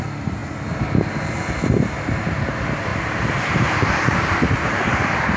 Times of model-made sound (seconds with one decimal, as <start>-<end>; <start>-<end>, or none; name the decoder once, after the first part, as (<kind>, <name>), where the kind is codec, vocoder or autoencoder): 0.0-5.4 (vocoder, BigVGAN v2)